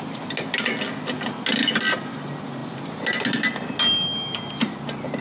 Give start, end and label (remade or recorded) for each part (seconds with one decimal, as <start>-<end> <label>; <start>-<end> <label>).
0.0-5.2 recorded